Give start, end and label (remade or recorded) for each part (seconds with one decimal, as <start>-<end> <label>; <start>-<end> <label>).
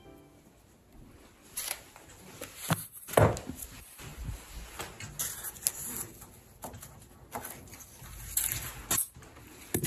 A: 0.0-9.9 recorded